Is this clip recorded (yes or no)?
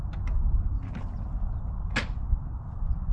yes